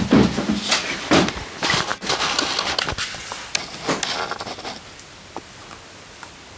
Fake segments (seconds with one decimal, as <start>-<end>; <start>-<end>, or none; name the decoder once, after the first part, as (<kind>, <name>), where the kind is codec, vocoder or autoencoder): none